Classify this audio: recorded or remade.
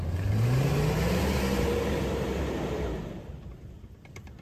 remade